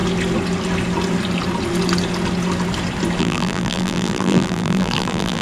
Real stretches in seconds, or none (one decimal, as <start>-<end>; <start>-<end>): 0.0-3.2